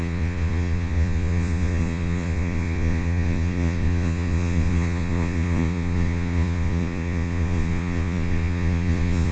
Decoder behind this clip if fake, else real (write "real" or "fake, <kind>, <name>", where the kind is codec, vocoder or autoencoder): fake, vocoder, Vocos